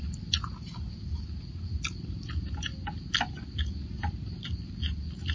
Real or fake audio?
real